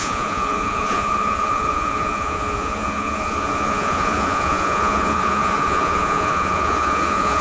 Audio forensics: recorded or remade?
remade